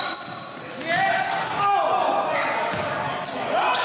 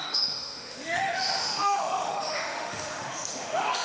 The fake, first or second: second